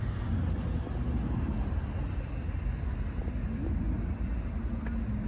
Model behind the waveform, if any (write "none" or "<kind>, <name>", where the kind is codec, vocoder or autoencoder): none